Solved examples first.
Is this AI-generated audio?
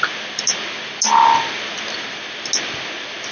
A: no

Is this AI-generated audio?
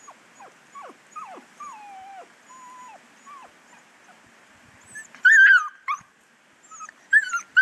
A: no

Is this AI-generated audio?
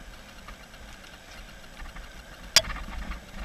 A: no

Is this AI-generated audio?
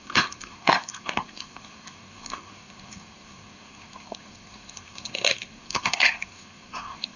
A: yes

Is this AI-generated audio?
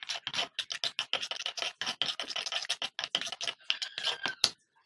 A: no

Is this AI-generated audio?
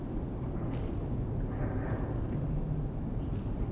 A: no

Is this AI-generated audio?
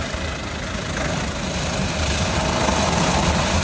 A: no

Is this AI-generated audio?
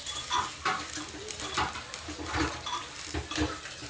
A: no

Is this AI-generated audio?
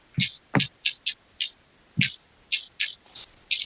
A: no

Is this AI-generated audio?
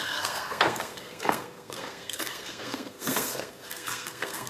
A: yes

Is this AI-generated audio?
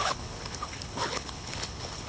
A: yes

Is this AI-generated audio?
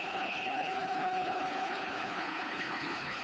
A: yes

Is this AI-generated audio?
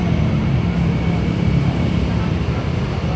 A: no